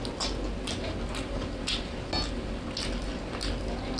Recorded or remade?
recorded